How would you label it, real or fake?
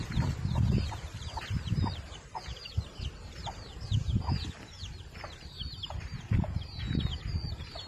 fake